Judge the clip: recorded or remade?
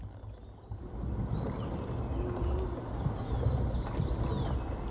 recorded